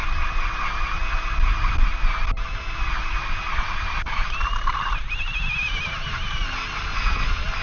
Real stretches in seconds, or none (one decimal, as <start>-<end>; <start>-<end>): 0.0-3.7; 6.4-7.6